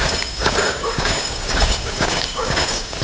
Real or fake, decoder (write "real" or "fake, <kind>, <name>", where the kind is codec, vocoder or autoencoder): fake, codec, DAC